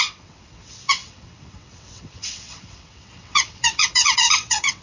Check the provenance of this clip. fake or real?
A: fake